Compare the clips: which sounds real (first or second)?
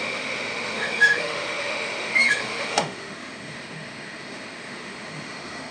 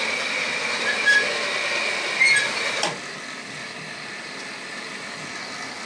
second